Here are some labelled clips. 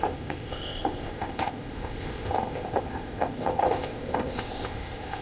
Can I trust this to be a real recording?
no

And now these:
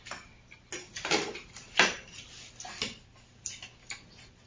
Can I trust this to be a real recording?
yes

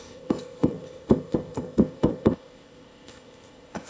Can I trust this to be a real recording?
no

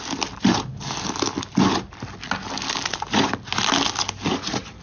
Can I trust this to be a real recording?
yes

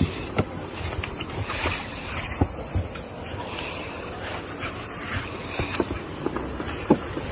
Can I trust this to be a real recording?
yes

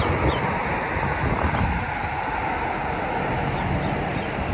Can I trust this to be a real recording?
yes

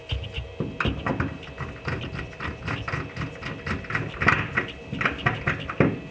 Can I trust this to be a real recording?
yes